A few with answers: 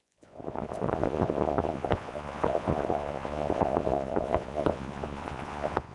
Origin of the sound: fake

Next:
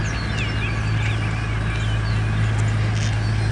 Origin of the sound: real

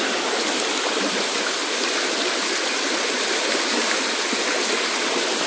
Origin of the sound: real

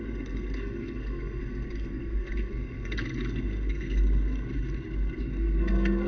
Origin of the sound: fake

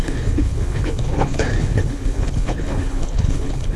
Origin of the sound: fake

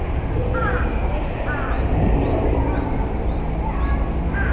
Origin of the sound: fake